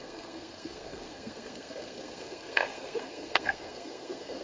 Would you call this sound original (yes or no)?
no